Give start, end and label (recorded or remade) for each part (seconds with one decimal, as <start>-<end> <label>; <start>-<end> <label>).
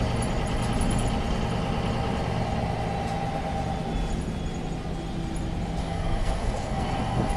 0.0-5.8 recorded; 5.8-7.4 remade